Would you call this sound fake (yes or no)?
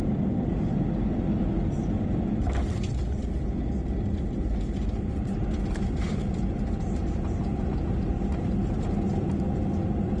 no